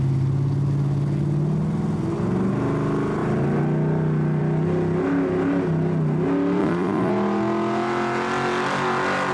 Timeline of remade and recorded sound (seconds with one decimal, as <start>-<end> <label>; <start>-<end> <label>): 0.0-6.6 recorded; 6.6-7.1 remade; 7.1-9.3 recorded